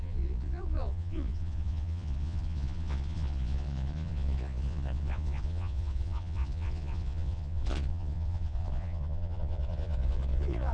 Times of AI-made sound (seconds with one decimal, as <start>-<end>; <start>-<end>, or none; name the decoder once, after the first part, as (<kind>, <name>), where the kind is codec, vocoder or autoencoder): 0.0-10.7 (vocoder, Vocos)